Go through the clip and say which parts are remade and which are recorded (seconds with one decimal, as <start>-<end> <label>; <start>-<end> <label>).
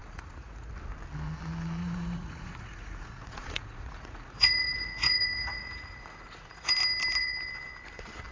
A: 0.0-0.7 remade; 0.7-1.8 recorded; 1.8-6.7 remade; 6.7-8.3 recorded